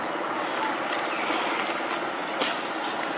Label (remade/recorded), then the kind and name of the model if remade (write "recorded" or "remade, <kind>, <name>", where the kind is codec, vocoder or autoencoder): recorded